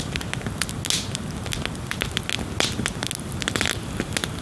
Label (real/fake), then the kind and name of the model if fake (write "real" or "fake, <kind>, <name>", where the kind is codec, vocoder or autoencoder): real